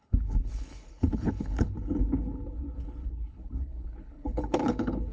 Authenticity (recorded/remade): remade